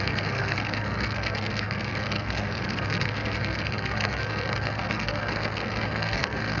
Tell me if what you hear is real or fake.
fake